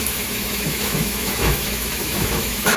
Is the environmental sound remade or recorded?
remade